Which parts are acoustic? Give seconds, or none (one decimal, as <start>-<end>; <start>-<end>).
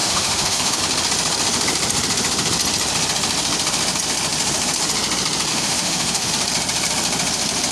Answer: 0.8-5.5; 6.3-7.7